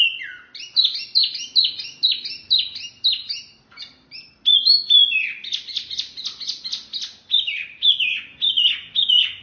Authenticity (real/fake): real